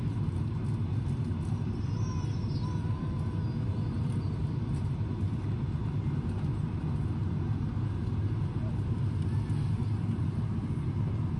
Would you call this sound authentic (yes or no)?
yes